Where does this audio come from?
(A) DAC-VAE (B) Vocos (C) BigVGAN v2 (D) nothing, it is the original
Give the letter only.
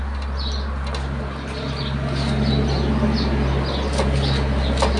D